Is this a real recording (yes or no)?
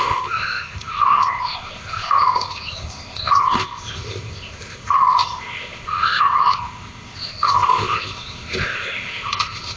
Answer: no